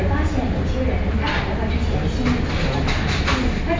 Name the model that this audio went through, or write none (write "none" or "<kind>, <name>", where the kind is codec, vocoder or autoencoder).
none